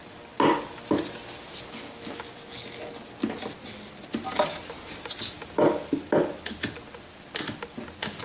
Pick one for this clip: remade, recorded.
recorded